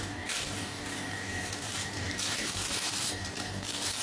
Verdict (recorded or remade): remade